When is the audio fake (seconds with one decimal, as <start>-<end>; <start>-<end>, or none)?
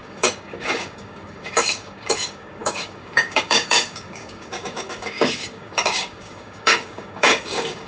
0.0-7.9